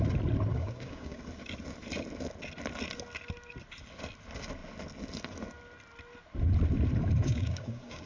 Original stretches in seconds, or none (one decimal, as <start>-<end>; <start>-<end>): 0.0-0.5; 1.2-7.2